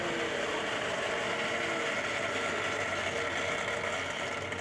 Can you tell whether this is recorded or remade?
recorded